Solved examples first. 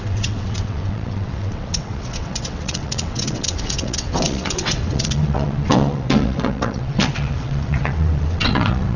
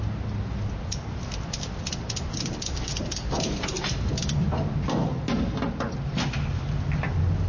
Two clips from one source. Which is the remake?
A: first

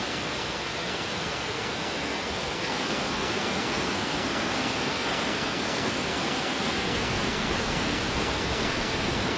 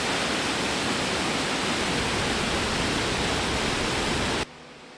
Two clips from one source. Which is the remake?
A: first